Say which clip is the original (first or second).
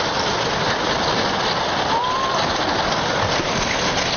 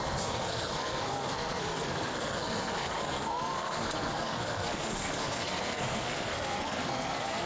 first